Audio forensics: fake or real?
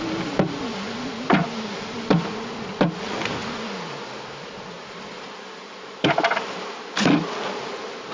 real